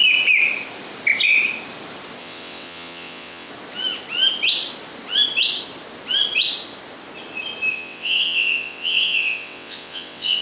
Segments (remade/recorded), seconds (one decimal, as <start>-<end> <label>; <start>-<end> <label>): 0.0-2.2 recorded; 2.2-3.5 remade; 3.5-7.7 recorded; 7.7-10.4 remade